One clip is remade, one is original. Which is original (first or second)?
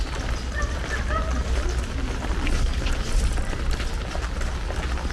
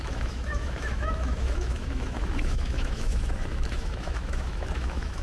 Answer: first